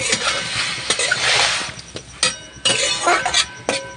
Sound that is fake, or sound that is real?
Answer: real